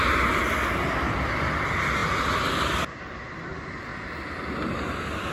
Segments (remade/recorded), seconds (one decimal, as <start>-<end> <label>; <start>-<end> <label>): 0.0-2.0 remade; 2.0-3.0 recorded; 3.0-3.9 remade; 3.9-5.3 recorded